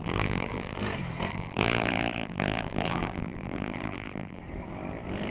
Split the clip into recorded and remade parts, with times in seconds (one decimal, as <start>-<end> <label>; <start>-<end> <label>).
0.0-0.8 remade; 0.8-1.3 recorded; 1.3-4.4 remade; 4.4-5.3 recorded